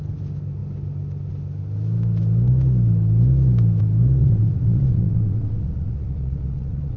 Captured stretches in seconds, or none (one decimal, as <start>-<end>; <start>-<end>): 0.0-4.2